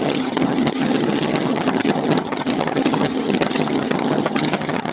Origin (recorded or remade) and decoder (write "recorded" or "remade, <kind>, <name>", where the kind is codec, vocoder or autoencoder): remade, vocoder, HiFi-GAN